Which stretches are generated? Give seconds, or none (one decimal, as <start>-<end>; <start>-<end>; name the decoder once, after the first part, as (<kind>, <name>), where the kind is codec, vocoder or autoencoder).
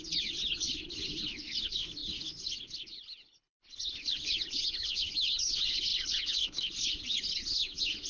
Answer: 0.0-8.1 (codec, HILCodec)